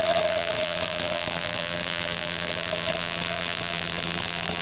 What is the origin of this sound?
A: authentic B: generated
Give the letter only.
B